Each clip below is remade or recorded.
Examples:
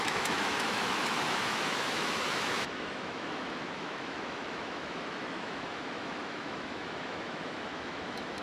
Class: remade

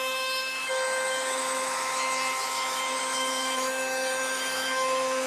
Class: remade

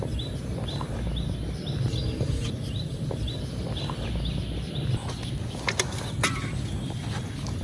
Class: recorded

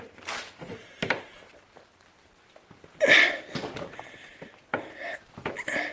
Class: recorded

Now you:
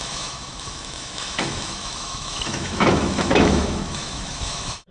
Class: remade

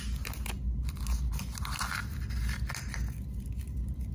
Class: recorded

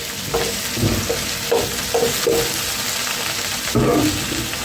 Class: recorded